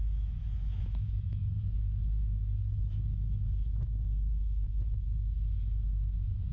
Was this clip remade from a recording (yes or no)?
yes